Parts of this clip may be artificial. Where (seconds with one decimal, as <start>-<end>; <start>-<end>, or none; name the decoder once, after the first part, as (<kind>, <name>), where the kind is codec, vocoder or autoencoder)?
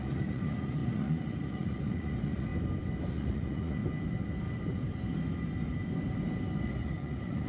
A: 0.0-2.5 (vocoder, Vocos); 3.1-3.8; 6.6-7.5